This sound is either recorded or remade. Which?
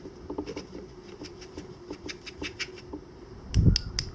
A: recorded